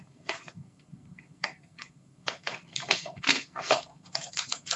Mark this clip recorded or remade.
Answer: remade